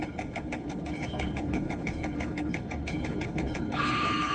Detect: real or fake fake